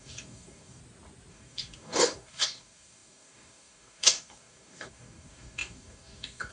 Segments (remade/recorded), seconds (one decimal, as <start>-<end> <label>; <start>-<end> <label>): 0.0-0.8 remade; 0.8-1.3 recorded; 1.3-6.5 remade